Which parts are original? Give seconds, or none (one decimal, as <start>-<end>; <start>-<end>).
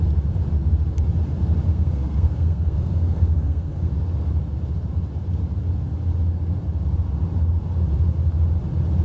0.0-1.7; 3.9-9.0